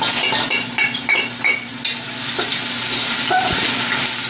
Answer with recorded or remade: recorded